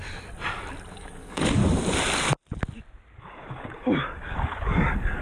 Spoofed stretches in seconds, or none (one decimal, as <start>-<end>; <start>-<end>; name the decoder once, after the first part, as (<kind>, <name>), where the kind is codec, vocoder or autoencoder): 0.9-1.6 (codec, DAC); 3.2-5.2